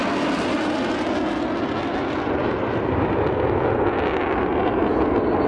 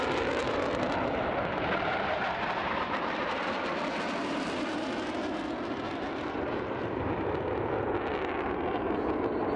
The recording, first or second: first